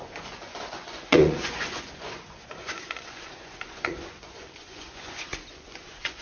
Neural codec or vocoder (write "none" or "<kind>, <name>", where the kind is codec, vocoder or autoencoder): vocoder, Vocos